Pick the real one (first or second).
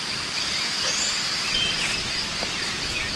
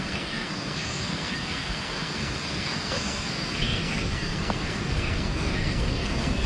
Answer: first